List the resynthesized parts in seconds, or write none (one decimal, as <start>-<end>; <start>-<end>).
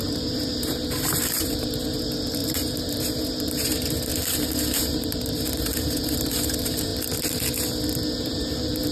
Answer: 0.0-6.9; 8.2-8.9